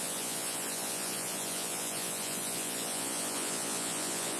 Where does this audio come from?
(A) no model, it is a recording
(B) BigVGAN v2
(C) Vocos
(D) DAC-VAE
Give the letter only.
C